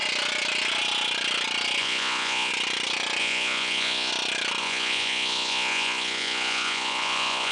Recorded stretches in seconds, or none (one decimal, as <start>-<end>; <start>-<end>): 0.0-1.8; 2.5-3.2; 4.1-4.6

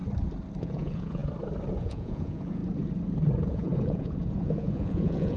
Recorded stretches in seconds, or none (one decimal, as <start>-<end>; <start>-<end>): 0.0-0.6; 1.2-1.8; 2.6-3.4